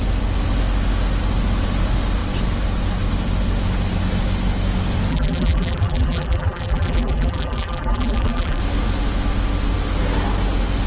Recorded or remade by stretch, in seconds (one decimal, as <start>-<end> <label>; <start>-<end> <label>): 0.0-5.1 recorded; 5.1-8.6 remade; 8.6-10.9 recorded